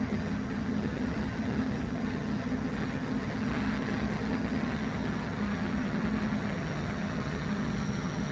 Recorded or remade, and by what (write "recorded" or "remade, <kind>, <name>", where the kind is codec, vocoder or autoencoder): remade, vocoder, HiFi-GAN